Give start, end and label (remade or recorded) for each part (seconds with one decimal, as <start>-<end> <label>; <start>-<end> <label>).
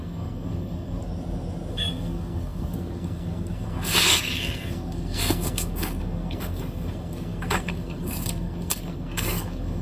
0.0-1.0 remade; 1.0-1.7 recorded; 1.7-9.8 remade